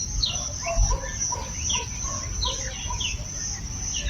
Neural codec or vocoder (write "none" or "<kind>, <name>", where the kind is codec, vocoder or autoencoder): vocoder, BigVGAN v2